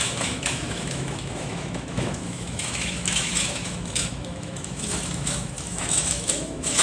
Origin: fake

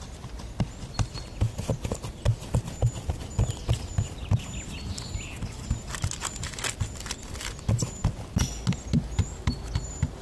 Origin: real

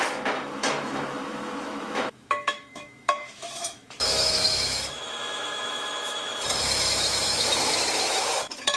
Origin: fake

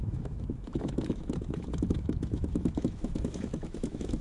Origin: fake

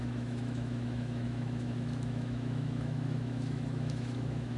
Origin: fake